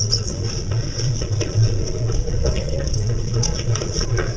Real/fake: fake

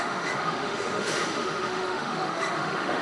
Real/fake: fake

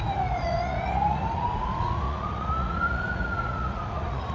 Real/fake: fake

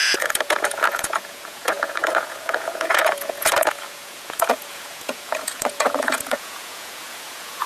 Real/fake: fake